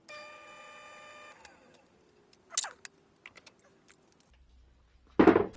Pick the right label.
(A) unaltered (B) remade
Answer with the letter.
A